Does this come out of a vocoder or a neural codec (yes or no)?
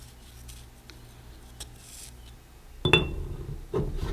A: no